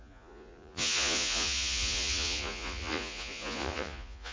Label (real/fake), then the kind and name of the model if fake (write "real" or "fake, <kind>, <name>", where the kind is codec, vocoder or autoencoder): fake, vocoder, Vocos